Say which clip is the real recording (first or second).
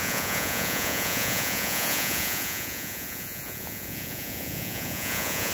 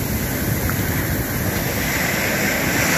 second